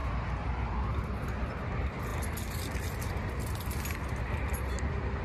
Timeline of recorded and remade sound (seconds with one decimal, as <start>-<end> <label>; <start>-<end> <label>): 0.0-5.2 recorded